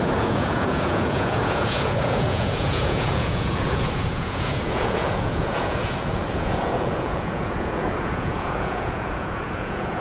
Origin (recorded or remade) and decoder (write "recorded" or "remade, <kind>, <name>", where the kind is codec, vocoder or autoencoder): remade, vocoder, Vocos